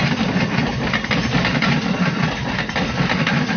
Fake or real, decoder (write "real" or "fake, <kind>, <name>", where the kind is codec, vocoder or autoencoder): real